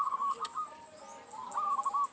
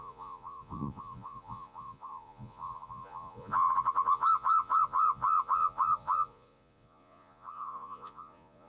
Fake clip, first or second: second